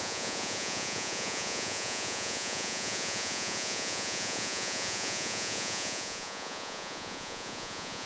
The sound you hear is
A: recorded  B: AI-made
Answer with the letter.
B